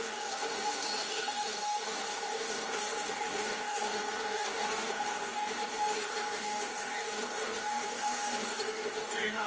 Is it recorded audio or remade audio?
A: remade